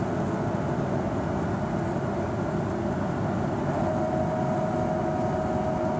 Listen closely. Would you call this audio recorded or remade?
recorded